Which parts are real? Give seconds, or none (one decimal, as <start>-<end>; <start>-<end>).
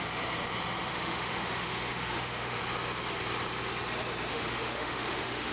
0.0-0.9; 2.6-4.3